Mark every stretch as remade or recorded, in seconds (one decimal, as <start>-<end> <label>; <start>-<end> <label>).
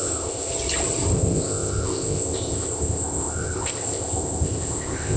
0.0-0.5 remade; 0.5-1.1 recorded; 1.1-5.2 remade